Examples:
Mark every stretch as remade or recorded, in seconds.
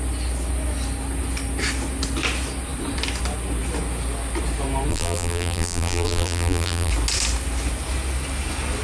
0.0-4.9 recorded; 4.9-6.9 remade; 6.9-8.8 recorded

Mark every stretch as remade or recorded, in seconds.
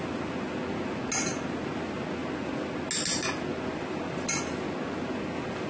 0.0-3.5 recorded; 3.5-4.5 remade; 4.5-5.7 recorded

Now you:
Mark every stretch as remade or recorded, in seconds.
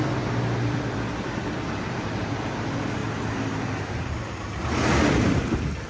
0.0-3.0 remade; 3.0-5.9 recorded